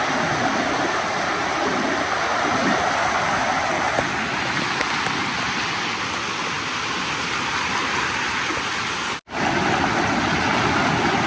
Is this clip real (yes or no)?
yes